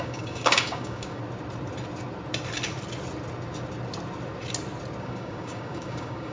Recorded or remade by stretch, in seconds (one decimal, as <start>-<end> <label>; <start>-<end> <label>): 0.0-1.2 remade; 1.2-5.0 recorded; 5.0-6.3 remade